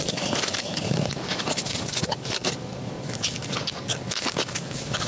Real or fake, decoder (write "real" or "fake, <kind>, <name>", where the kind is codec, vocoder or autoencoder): fake, codec, DAC